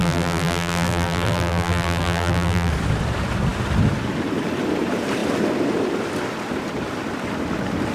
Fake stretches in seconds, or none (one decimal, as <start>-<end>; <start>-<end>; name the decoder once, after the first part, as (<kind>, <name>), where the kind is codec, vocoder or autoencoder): 0.0-2.7 (vocoder, BigVGAN v2)